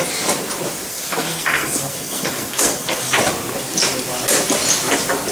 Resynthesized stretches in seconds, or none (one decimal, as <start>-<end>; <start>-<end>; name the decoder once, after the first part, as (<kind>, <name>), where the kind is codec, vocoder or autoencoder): 0.9-3.1 (codec, SNAC)